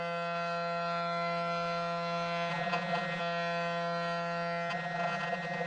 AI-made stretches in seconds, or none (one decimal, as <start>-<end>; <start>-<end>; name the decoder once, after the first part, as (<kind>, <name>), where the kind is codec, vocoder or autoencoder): 2.5-3.2 (vocoder, Vocos); 4.7-5.7